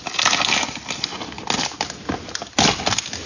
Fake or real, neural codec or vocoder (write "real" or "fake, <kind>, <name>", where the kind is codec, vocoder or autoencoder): real